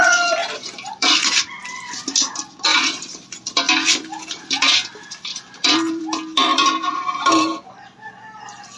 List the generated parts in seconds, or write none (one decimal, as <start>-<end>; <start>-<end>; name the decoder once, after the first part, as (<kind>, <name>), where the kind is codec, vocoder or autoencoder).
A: 0.4-1.5 (vocoder, BigVGAN v2); 5.3-6.0; 6.5-8.1